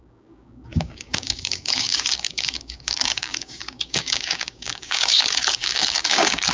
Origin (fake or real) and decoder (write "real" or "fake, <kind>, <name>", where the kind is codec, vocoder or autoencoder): fake, codec, DAC